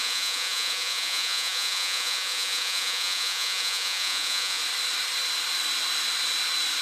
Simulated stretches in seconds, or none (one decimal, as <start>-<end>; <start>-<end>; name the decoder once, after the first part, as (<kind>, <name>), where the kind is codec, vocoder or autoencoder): 0.0-4.6 (vocoder, Vocos)